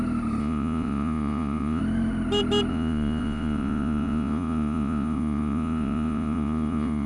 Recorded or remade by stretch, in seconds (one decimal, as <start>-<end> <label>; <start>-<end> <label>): 0.0-0.4 recorded; 0.4-1.8 remade; 1.8-2.7 recorded; 2.7-7.1 remade